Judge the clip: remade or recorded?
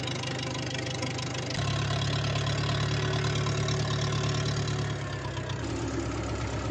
recorded